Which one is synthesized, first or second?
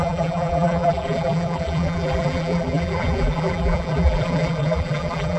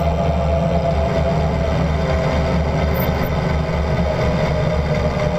first